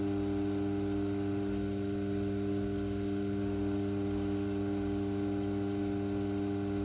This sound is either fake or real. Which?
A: fake